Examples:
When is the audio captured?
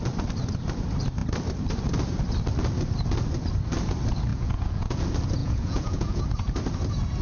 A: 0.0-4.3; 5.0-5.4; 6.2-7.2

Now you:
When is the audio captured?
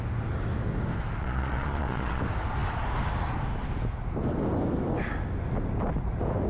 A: 0.0-1.2; 2.2-6.5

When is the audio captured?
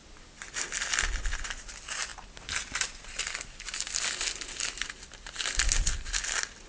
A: 0.0-6.7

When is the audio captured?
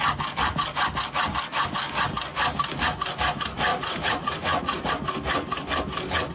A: 0.0-3.7; 4.9-6.3